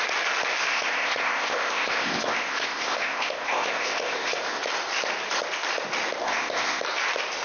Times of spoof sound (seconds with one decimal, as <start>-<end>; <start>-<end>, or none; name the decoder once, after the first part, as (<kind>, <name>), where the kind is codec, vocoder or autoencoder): 0.7-4.6 (codec, ZipCodec); 6.2-6.8